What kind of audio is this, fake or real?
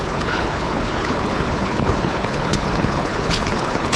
fake